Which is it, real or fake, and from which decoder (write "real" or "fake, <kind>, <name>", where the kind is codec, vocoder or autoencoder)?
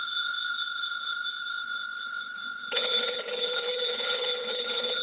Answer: fake, codec, HILCodec